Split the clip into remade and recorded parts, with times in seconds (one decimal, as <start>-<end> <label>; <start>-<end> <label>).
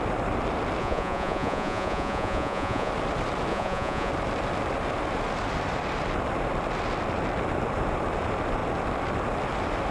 0.0-0.8 recorded; 0.8-2.9 remade; 2.9-3.5 recorded; 3.5-4.1 remade; 4.1-9.9 recorded